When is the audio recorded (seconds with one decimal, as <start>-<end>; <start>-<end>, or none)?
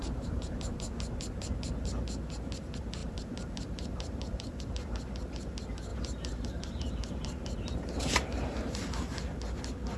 0.9-3.0; 4.6-5.9; 8.8-10.0